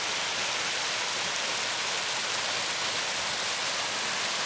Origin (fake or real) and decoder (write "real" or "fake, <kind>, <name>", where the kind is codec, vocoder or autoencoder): real